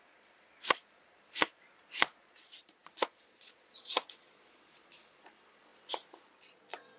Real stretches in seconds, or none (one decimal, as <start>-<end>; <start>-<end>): none